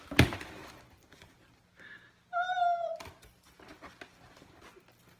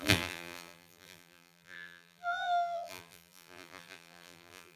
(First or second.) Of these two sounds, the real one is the first